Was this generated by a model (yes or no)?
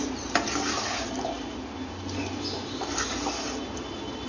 no